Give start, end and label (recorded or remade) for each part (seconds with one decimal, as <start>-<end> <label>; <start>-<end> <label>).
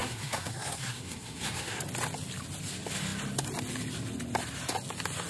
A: 0.0-1.8 remade; 1.8-5.3 recorded